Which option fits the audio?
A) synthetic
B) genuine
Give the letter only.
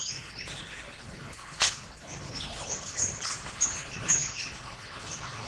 A